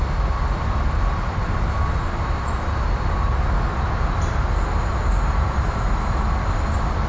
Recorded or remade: recorded